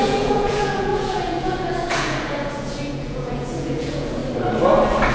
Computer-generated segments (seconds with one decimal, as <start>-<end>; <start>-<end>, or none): 0.0-4.2